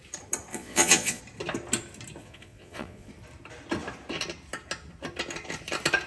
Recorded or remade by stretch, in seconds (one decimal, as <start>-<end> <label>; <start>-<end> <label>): 0.0-0.5 recorded; 0.5-1.2 remade; 1.2-2.2 recorded; 2.2-3.1 remade; 3.1-6.1 recorded